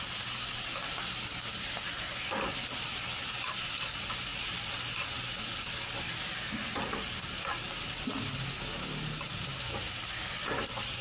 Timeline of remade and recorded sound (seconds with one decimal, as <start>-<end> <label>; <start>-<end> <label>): 0.0-11.0 recorded